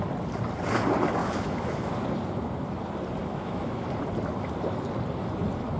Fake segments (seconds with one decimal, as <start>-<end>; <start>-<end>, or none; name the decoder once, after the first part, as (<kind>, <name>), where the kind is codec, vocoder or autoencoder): 1.2-1.9 (autoencoder, DAC-VAE); 3.2-3.8